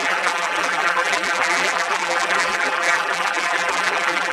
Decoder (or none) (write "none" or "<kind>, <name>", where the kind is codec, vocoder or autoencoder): vocoder, BigVGAN v2